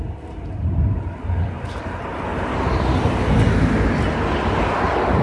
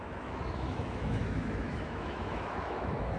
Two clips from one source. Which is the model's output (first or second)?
second